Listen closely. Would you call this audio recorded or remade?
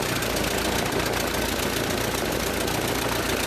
recorded